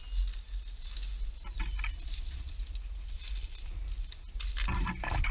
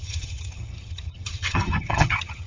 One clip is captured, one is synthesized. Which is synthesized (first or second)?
second